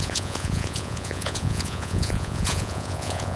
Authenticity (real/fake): fake